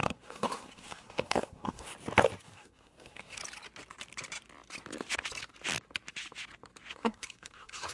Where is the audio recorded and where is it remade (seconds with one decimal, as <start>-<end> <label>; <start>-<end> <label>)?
0.0-1.9 remade; 1.9-2.4 recorded; 2.4-3.4 remade; 3.4-6.9 recorded; 6.9-7.9 remade

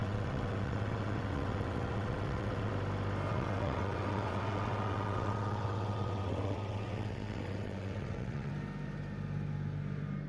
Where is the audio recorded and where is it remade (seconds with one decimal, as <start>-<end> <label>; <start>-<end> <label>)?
0.0-2.7 remade; 2.7-3.3 recorded; 3.3-8.5 remade; 8.5-10.3 recorded